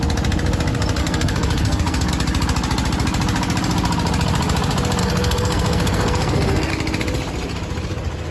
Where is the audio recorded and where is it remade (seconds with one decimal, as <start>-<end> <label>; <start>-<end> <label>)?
0.0-1.0 recorded; 1.0-2.1 remade; 2.1-5.0 recorded; 5.0-6.7 remade; 6.7-8.3 recorded